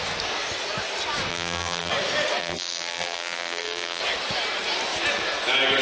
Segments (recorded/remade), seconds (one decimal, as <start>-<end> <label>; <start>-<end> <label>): 0.0-1.3 recorded; 1.3-1.9 remade; 1.9-2.4 recorded; 2.4-4.0 remade; 4.0-5.8 recorded